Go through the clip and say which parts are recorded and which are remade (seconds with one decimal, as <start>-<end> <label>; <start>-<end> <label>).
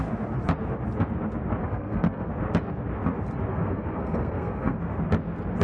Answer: 0.0-1.6 recorded; 1.6-2.3 remade; 2.3-3.5 recorded; 3.5-4.8 remade; 4.8-5.6 recorded